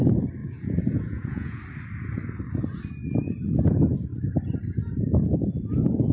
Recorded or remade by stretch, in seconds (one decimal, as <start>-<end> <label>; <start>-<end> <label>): 0.0-0.4 recorded; 0.4-1.6 remade; 1.6-6.1 recorded